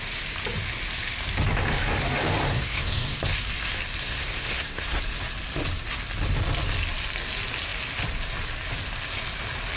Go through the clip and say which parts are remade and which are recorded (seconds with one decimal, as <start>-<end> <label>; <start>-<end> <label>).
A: 0.0-2.5 recorded; 2.5-3.2 remade; 3.2-4.0 recorded; 4.0-5.0 remade; 5.0-9.8 recorded